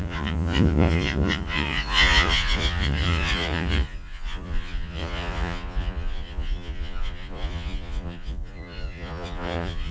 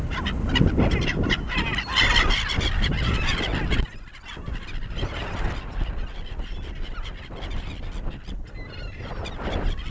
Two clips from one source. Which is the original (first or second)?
second